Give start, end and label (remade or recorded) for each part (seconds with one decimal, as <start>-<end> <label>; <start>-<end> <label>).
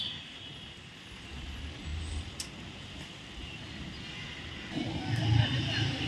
0.0-6.1 recorded